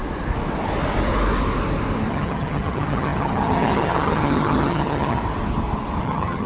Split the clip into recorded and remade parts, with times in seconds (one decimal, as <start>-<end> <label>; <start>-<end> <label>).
0.0-2.1 recorded; 2.1-5.2 remade; 5.2-6.0 recorded; 6.0-6.5 remade